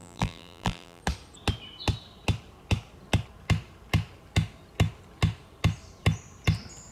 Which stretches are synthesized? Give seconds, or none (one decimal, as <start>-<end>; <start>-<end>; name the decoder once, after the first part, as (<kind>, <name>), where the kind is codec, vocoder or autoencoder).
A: 0.0-1.0 (vocoder, BigVGAN v2)